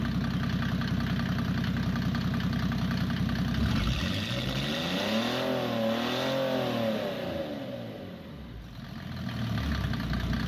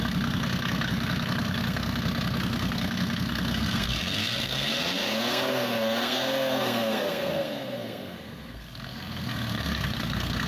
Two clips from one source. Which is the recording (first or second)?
first